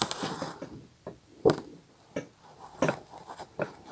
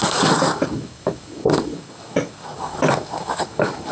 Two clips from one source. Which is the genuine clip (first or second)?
first